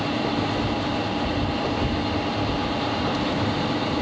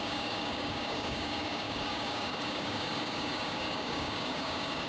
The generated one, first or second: second